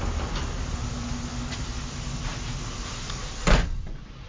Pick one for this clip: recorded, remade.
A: recorded